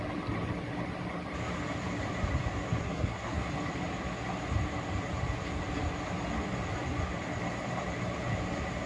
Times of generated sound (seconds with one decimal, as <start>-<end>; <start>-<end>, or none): 2.8-3.5